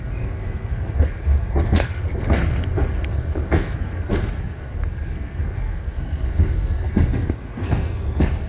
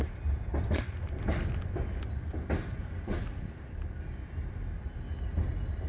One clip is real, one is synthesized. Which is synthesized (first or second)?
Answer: first